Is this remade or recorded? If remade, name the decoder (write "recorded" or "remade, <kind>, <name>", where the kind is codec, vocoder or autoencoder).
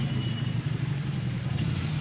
remade, vocoder, BigVGAN v2